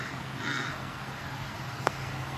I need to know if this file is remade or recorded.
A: remade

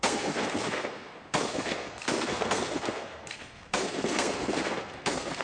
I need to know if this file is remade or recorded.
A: remade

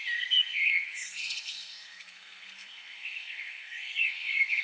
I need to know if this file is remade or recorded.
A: remade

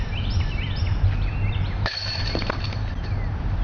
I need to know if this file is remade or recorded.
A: recorded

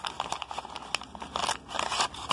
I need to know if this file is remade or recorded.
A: recorded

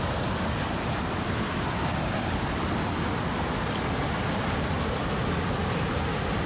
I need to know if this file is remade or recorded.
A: recorded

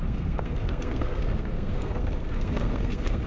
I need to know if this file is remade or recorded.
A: remade